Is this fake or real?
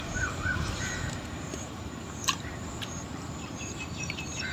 fake